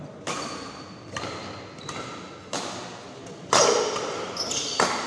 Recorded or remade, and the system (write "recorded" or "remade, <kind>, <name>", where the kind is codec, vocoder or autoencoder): recorded